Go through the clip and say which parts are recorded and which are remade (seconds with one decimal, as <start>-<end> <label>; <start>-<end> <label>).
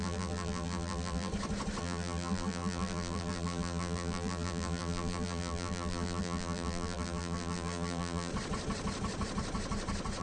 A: 0.0-1.3 remade; 1.3-1.8 recorded; 1.8-8.3 remade; 8.3-10.2 recorded